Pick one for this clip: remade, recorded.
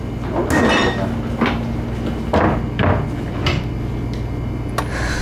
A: recorded